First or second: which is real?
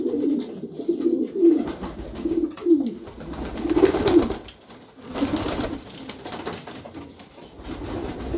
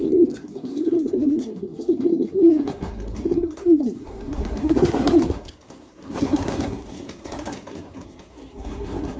first